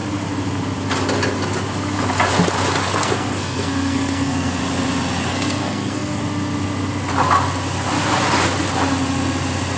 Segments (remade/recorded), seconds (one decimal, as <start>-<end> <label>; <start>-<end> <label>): 0.0-2.8 recorded; 2.8-4.6 remade; 4.6-5.3 recorded; 5.3-6.2 remade; 6.2-9.8 recorded